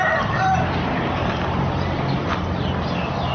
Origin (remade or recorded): recorded